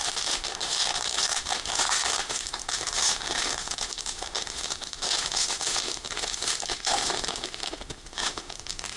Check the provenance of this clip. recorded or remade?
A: remade